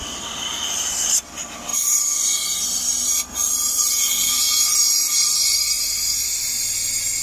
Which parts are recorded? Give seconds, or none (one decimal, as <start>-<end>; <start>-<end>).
0.0-7.2